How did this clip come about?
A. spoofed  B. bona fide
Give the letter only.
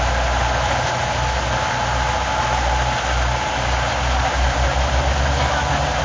B